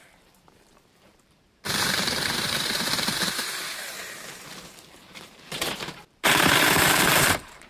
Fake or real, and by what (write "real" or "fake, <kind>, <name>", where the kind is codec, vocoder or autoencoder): fake, vocoder, BigVGAN v2